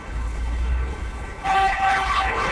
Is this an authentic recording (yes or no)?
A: no